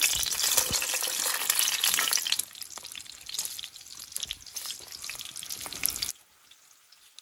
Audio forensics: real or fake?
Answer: real